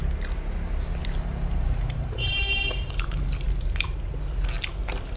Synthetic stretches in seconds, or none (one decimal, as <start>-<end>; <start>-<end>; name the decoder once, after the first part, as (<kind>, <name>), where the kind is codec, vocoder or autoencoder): 1.0-4.1 (vocoder, BigVGAN v2)